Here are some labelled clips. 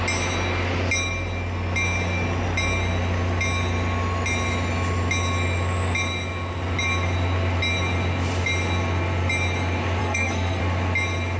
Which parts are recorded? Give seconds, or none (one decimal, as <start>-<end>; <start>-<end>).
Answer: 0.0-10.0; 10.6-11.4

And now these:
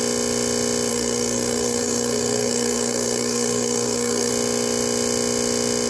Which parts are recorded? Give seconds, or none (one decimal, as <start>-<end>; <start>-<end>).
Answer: 0.0-0.9; 4.3-5.9

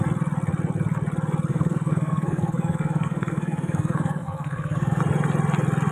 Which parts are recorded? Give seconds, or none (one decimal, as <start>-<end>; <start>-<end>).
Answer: 0.0-1.5; 5.0-5.9